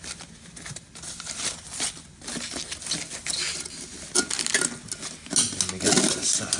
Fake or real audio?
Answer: real